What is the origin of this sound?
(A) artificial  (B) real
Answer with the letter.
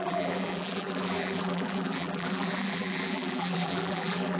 A